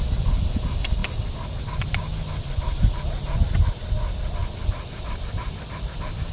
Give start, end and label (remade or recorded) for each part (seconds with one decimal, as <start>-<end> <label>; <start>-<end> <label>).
0.0-6.3 recorded